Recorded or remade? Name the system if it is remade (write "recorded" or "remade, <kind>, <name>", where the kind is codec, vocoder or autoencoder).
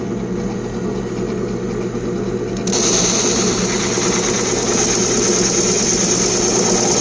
recorded